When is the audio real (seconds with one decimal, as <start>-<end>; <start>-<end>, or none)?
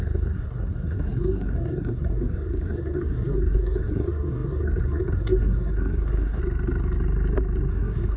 6.4-7.7